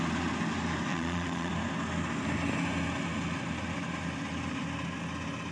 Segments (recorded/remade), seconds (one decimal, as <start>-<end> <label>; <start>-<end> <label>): 0.0-0.9 recorded; 0.9-1.5 remade; 1.5-5.5 recorded